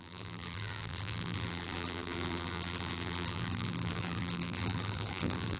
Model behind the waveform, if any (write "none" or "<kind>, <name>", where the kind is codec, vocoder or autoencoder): vocoder, BigVGAN v2